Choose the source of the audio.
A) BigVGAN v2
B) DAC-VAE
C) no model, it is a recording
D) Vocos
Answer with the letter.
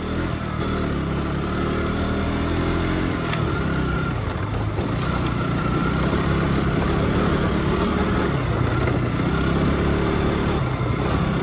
C